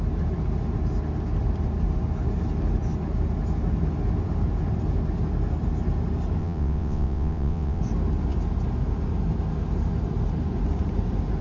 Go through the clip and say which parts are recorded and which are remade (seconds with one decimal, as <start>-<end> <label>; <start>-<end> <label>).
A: 0.0-6.4 recorded; 6.4-7.8 remade; 7.8-11.4 recorded